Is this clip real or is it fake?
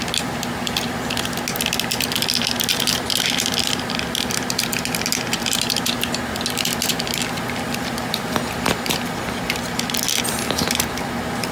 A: real